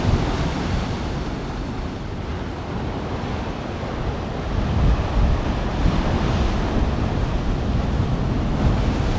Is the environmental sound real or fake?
real